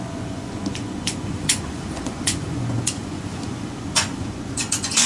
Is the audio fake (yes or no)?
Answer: yes